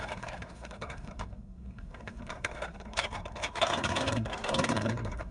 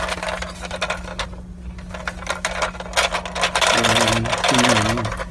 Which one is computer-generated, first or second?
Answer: first